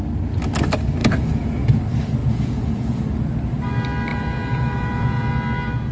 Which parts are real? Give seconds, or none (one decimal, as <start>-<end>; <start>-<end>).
0.0-1.0; 1.8-2.2; 3.0-4.1; 5.3-5.9